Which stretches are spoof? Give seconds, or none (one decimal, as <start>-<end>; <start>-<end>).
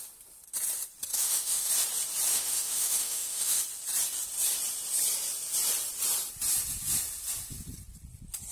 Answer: 1.1-1.7; 2.3-3.6